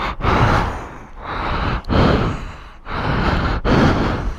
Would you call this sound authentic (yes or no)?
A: no